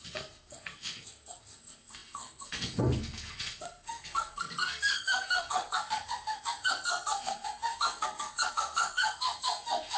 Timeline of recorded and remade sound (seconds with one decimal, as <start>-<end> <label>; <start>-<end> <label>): 0.0-10.0 remade